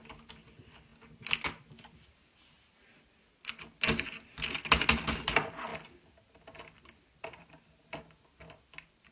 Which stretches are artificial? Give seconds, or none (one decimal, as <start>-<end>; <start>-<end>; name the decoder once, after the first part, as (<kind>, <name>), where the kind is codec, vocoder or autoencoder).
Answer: 5.7-8.0 (vocoder, BigVGAN v2)